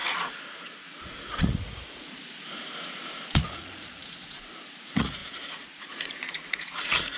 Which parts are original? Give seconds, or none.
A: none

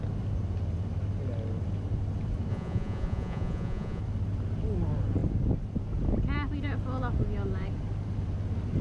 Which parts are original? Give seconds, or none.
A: 0.0-2.5; 4.0-8.8

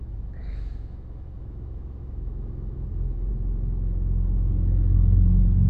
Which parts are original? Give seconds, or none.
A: 3.3-5.7

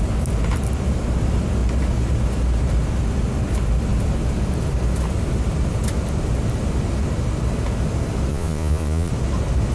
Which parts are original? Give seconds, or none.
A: 0.0-8.3; 9.1-9.7

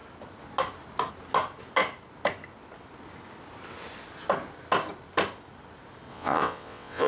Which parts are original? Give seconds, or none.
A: 0.0-6.1

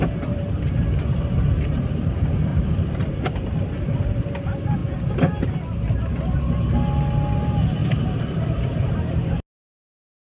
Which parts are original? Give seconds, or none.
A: 0.0-2.5; 3.1-7.8; 8.9-10.4

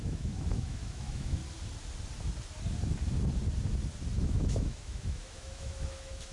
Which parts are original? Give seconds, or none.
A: 1.4-4.2

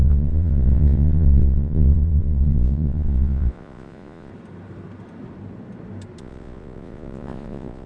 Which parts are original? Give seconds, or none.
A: 4.3-6.2